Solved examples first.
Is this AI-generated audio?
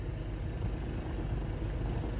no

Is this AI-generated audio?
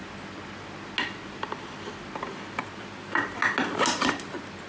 no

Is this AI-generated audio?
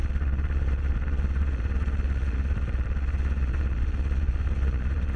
yes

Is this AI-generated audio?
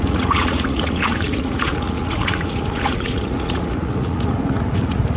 yes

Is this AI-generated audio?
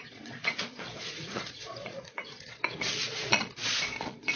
yes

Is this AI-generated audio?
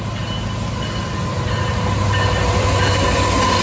no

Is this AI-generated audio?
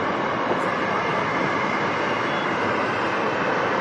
no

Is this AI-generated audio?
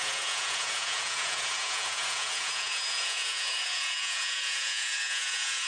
yes